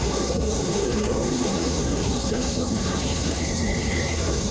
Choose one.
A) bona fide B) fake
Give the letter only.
B